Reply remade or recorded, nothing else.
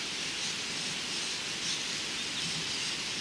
recorded